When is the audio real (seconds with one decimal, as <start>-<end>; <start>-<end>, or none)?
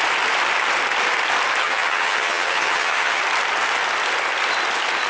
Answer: 0.0-1.6; 3.2-5.1